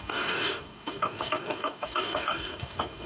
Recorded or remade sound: remade